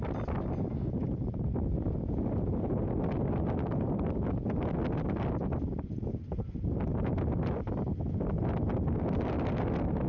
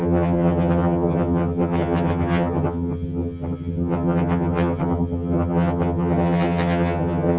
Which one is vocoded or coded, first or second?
second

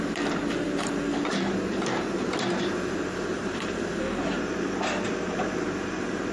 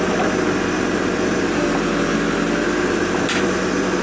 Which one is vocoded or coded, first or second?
first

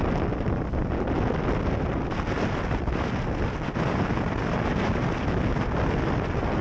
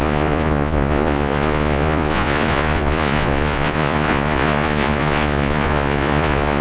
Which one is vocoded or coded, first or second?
second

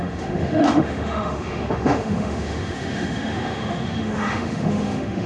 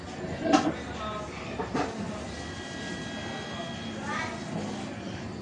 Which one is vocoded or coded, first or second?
first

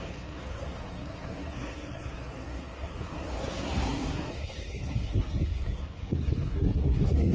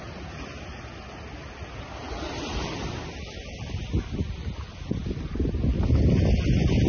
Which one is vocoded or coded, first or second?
first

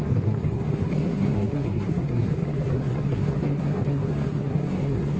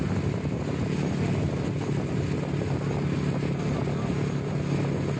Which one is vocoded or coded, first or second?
first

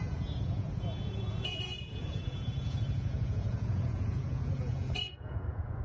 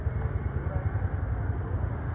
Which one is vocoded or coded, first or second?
first